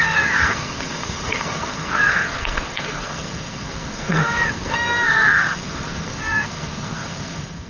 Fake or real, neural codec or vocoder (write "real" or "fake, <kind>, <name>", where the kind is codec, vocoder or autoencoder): fake, codec, SNAC